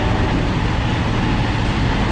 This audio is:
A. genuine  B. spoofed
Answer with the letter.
A